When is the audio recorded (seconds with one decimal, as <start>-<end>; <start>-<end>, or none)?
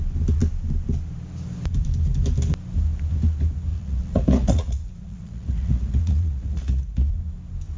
0.0-3.7; 7.1-7.8